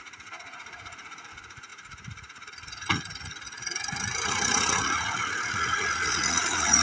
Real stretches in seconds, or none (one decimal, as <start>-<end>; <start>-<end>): none